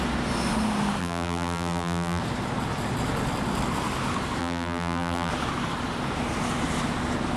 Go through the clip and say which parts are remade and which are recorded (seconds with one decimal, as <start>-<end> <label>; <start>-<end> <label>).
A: 0.0-1.0 recorded; 1.0-2.2 remade; 2.2-4.4 recorded; 4.4-5.3 remade; 5.3-7.4 recorded